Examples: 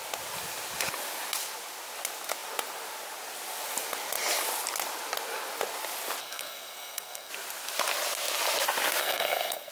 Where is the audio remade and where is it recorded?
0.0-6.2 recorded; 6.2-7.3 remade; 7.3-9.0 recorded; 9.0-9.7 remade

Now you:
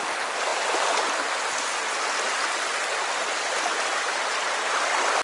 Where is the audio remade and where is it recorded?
0.0-5.2 recorded

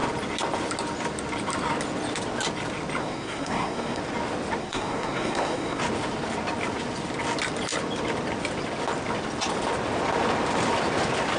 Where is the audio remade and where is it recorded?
0.0-3.0 recorded; 3.0-4.0 remade; 4.0-4.6 recorded; 4.6-5.8 remade; 5.8-11.4 recorded

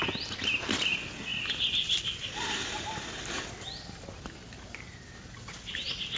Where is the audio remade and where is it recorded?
0.0-6.2 recorded

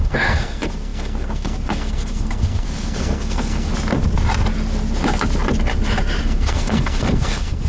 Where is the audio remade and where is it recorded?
0.0-3.7 remade; 3.7-6.2 recorded; 6.2-7.7 remade

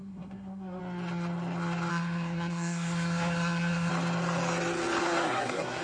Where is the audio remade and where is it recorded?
0.0-0.8 remade; 0.8-1.9 recorded; 1.9-3.9 remade; 3.9-5.0 recorded; 5.0-5.8 remade